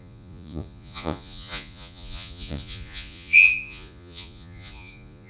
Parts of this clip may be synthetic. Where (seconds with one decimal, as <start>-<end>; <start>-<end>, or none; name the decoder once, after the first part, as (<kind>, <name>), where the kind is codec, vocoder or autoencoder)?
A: 0.0-5.3 (vocoder, Vocos)